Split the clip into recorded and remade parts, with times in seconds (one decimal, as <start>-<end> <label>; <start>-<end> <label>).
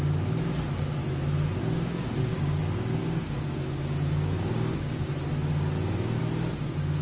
0.0-1.6 recorded; 1.6-2.6 remade; 2.6-3.0 recorded; 3.0-5.1 remade; 5.1-5.5 recorded; 5.5-6.2 remade; 6.2-7.0 recorded